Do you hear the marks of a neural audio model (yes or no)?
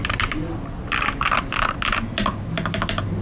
no